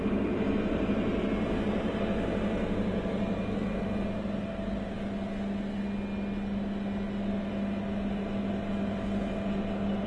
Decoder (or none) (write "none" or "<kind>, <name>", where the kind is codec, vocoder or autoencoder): none